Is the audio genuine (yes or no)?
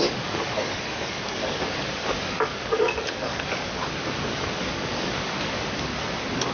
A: no